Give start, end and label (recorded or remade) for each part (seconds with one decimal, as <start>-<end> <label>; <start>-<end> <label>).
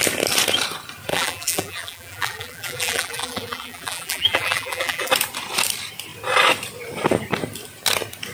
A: 0.0-1.1 recorded; 1.1-5.1 remade; 5.1-8.3 recorded